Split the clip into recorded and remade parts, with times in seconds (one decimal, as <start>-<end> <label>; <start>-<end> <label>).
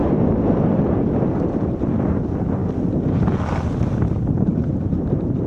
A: 0.0-5.5 recorded